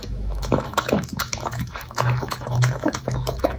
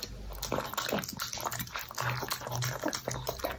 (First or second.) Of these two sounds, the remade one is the first